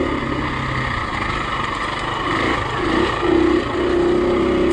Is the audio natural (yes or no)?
yes